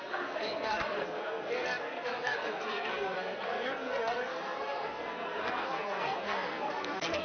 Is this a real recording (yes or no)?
no